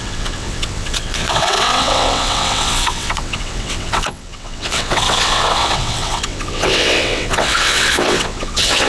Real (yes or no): no